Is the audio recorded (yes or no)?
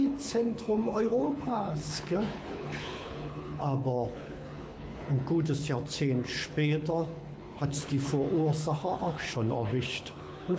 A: no